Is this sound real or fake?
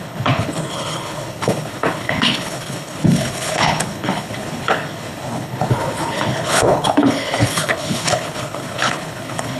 fake